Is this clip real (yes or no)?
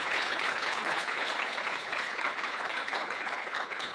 no